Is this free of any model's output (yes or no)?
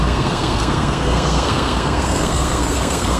no